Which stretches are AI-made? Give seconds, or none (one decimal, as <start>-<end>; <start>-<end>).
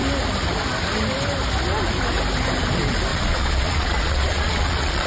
3.1-5.1